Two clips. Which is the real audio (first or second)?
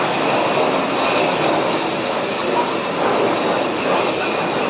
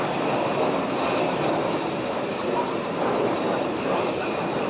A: first